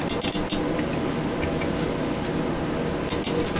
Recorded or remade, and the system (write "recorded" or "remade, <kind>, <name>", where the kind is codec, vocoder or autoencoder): recorded